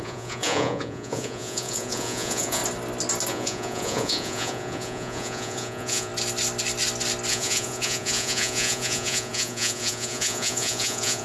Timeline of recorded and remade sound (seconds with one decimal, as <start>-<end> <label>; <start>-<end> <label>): 0.0-2.6 remade; 2.6-3.3 recorded; 3.3-6.1 remade; 6.1-7.3 recorded; 7.3-11.2 remade